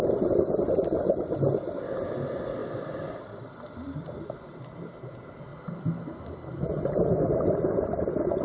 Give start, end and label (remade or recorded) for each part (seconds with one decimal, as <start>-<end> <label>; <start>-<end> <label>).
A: 0.0-2.6 recorded; 2.6-4.3 remade; 4.3-8.4 recorded